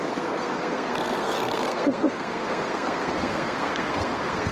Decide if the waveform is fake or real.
fake